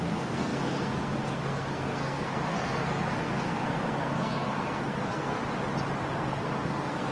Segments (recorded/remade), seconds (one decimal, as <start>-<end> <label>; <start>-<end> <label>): 0.0-5.4 remade; 5.4-6.1 recorded; 6.1-7.1 remade